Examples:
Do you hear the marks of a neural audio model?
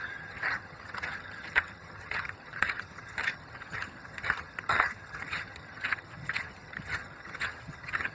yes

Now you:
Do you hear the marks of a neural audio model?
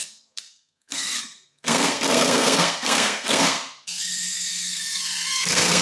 yes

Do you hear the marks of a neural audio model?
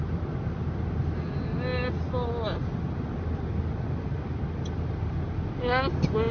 no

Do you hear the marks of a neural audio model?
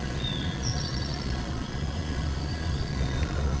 yes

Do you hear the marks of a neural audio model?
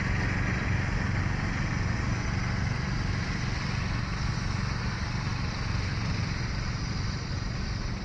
no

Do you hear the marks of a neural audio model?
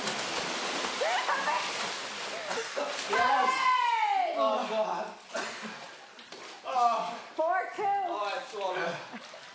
no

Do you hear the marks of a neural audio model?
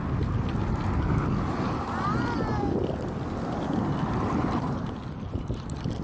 no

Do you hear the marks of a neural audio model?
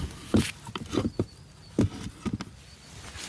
no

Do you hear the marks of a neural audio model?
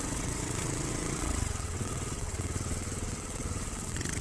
yes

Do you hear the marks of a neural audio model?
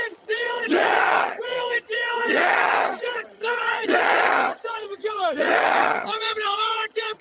yes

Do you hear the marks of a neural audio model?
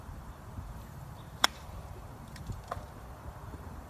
yes